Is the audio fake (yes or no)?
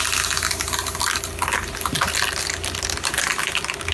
no